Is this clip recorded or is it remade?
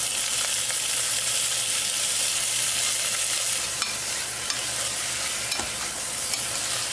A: recorded